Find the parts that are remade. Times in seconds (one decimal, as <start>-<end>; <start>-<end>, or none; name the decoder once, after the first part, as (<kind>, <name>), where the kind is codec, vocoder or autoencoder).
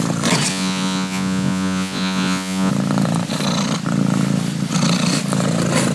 0.5-2.7 (vocoder, Vocos)